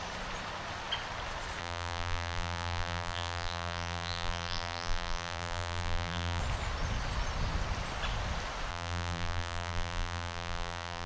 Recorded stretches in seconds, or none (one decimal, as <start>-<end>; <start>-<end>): 0.0-1.6; 6.4-8.7